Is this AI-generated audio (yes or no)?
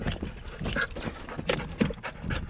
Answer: no